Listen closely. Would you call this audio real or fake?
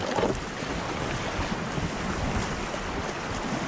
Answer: real